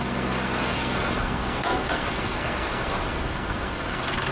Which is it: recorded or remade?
remade